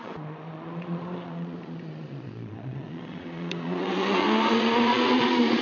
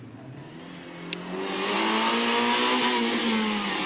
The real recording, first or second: second